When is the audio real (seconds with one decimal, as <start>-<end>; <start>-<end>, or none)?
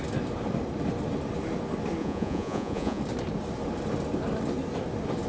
0.0-2.0; 3.0-5.3